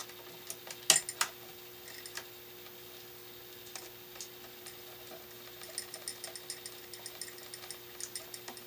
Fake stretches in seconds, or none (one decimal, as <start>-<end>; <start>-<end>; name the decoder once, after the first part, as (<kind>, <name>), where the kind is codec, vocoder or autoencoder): none